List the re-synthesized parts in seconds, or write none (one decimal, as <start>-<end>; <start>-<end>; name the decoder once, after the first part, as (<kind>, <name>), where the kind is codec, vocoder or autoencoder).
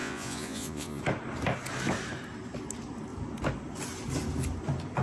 0.0-1.0 (vocoder, Vocos)